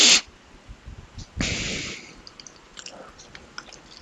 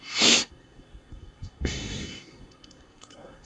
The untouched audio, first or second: first